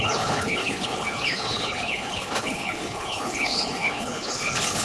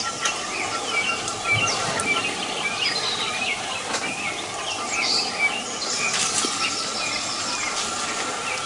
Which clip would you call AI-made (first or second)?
first